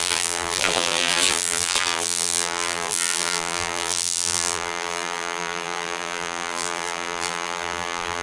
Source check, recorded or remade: remade